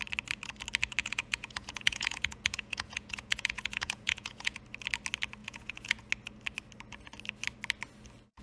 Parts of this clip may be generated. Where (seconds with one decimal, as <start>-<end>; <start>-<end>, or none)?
1.0-4.6; 5.4-6.0